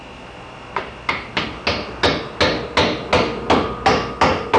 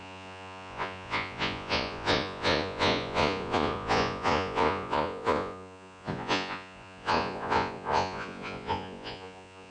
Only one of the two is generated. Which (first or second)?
second